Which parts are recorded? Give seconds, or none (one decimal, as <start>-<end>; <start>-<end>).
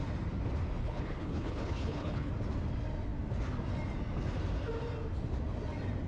0.0-0.8; 2.3-6.1